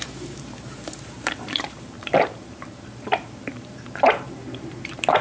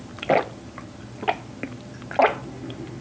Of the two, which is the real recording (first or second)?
second